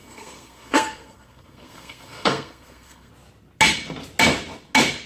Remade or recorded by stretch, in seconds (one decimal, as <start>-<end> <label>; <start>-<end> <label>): 0.0-3.1 remade; 3.1-5.1 recorded